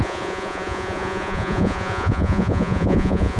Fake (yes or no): yes